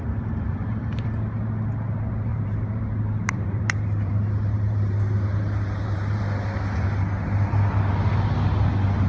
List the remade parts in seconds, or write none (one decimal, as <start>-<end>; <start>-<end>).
2.3-6.2